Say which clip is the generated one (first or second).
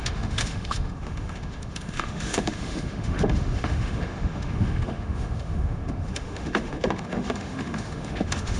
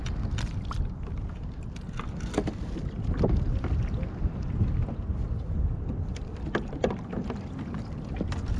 first